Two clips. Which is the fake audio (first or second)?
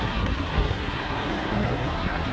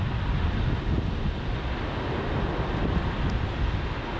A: first